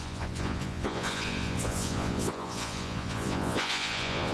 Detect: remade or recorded remade